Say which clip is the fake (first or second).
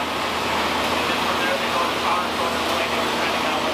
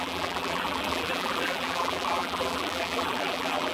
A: second